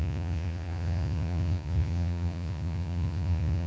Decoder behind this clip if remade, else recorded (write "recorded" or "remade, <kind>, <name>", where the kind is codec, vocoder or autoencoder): remade, vocoder, Vocos